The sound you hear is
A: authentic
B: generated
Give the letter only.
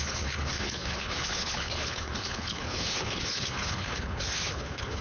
B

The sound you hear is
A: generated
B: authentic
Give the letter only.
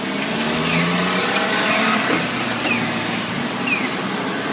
B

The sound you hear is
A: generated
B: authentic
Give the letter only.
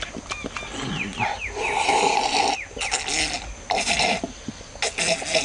B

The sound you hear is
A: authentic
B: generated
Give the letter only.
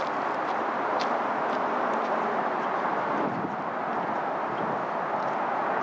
A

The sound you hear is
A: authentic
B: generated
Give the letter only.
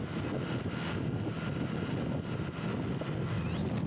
A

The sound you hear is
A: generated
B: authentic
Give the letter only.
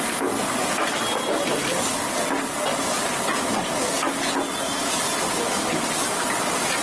B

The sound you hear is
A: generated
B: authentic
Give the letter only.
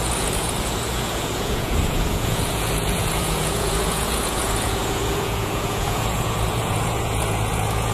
A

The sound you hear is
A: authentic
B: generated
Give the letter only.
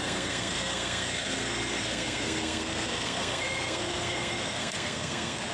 B